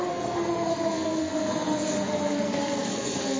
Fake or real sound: fake